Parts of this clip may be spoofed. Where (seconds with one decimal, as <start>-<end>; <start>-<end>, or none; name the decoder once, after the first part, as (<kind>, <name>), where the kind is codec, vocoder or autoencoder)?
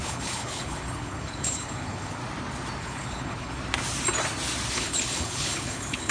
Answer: 0.0-2.2 (codec, HILCodec); 2.8-3.6; 4.7-6.1